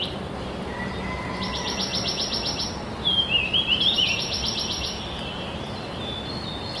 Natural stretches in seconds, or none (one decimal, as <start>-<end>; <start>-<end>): 0.0-6.8